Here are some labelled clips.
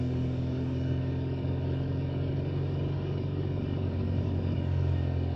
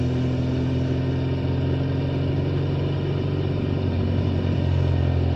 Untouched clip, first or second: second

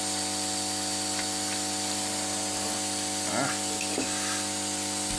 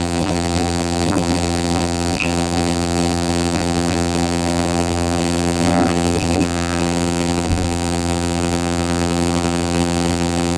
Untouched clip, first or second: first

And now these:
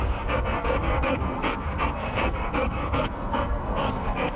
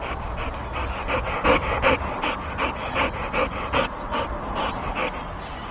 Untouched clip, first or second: second